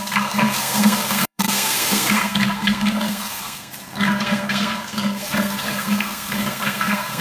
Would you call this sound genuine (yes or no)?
no